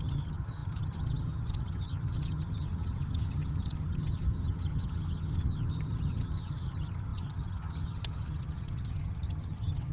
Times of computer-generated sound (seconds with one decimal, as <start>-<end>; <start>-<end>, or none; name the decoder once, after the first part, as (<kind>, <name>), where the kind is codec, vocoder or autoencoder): 0.0-9.9 (vocoder, HiFi-GAN)